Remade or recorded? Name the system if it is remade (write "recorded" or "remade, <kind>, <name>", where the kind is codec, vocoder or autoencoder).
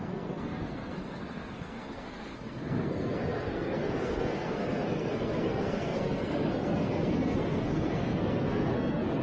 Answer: remade, codec, SNAC